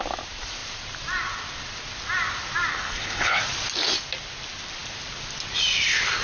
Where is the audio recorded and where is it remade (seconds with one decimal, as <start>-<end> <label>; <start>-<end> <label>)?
0.0-2.7 recorded; 2.7-3.4 remade; 3.4-6.2 recorded